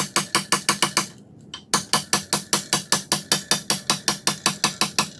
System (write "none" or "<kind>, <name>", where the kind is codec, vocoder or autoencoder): none